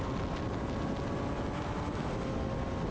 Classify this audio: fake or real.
real